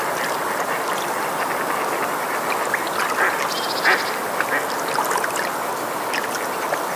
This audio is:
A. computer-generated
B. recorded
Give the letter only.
B